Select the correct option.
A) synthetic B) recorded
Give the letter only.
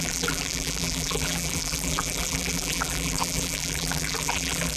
A